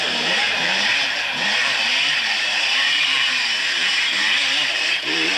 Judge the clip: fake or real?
fake